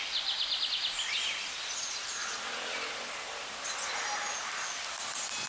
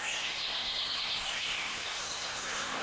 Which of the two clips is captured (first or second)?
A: first